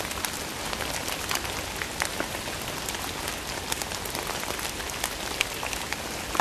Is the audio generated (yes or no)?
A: no